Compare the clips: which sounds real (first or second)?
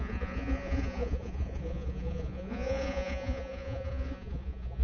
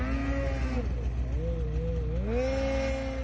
second